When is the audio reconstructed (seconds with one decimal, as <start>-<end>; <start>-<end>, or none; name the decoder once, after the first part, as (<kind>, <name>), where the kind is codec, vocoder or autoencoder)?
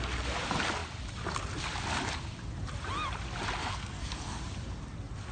3.6-4.4 (codec, SNAC)